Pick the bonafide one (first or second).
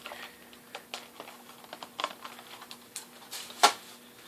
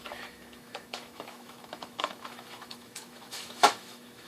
first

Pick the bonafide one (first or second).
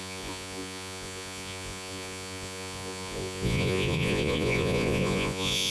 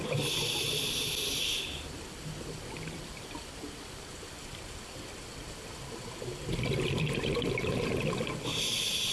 second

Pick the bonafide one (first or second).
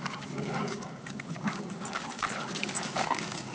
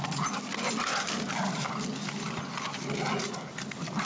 second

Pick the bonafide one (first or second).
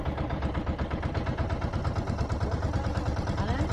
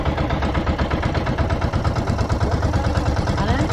first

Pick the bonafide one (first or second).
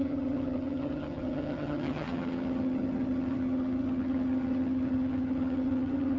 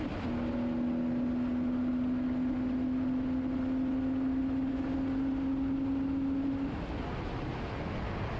second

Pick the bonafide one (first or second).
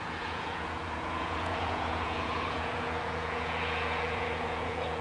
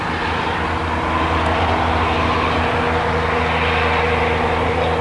second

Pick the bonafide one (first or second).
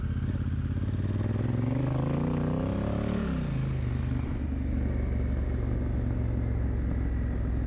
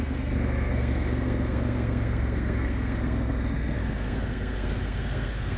first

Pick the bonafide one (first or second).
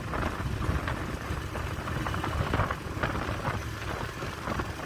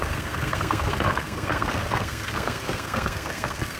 first